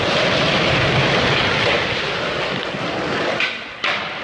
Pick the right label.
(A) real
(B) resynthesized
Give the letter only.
A